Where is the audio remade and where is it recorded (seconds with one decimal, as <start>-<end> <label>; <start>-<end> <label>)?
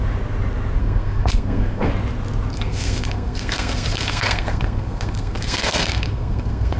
0.0-0.8 recorded; 0.8-1.9 remade; 1.9-2.5 recorded; 2.5-6.8 remade